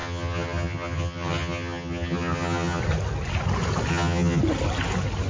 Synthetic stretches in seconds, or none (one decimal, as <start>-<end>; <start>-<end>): 0.0-2.8; 3.9-4.4